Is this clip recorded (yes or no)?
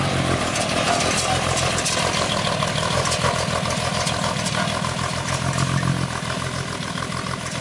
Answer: yes